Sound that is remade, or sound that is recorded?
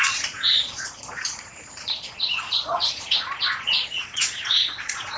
remade